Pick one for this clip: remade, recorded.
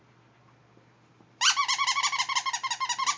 recorded